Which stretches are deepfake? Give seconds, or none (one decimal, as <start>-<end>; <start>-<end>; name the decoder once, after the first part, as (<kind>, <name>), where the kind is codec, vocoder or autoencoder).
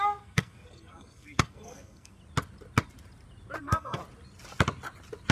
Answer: 0.0-2.2 (codec, SNAC); 3.6-4.0